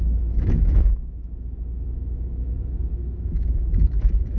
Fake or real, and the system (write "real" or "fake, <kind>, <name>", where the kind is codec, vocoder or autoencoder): fake, autoencoder, DAC-VAE